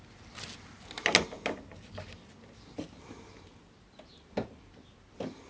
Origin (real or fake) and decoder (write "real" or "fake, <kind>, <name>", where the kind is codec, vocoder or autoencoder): real